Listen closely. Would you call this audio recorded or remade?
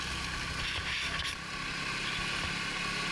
recorded